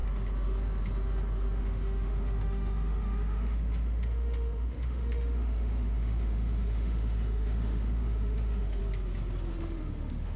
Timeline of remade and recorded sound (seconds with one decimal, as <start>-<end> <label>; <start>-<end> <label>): 0.0-1.6 recorded; 1.6-8.8 remade; 8.8-9.5 recorded; 9.5-10.4 remade